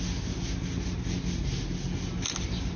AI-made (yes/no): no